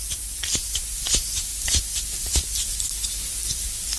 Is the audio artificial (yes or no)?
no